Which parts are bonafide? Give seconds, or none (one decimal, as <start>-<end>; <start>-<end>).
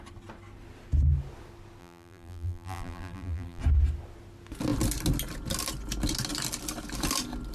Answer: 0.0-1.8; 3.6-7.5